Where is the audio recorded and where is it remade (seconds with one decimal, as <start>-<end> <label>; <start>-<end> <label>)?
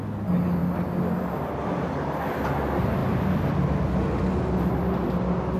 0.0-5.6 recorded